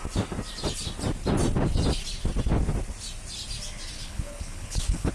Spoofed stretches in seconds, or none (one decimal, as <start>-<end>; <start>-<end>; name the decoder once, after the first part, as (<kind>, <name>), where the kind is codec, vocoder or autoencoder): 4.0-5.1 (codec, HILCodec)

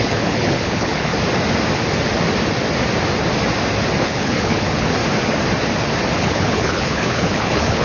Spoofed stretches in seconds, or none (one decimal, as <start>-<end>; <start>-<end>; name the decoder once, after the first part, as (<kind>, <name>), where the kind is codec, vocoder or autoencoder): 0.0-1.1 (codec, HILCodec); 4.0-5.0; 6.2-7.8

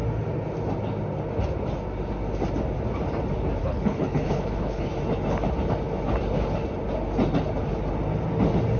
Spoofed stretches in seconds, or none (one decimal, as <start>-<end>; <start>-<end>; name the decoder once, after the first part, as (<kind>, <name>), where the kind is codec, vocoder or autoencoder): 3.6-4.9 (codec, HILCodec)

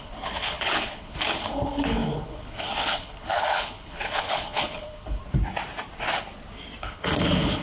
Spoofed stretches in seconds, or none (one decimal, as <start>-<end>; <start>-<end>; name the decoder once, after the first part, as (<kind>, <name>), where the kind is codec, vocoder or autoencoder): 0.0-5.2 (codec, HILCodec); 6.8-7.6

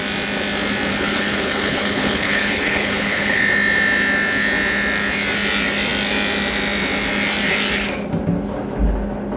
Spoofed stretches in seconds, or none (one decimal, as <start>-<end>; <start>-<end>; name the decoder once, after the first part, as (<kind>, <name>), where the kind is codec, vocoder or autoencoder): 0.9-3.4 (codec, HILCodec)

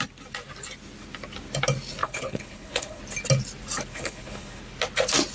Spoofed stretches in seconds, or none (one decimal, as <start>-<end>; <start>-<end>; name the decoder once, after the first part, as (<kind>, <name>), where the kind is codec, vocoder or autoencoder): 2.0-3.0 (codec, HILCodec); 3.9-4.6